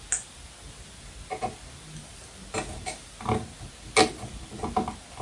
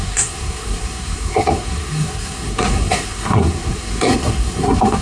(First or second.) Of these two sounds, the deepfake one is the second